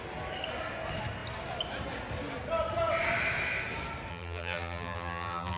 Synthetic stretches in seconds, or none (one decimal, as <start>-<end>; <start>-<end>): 4.1-5.6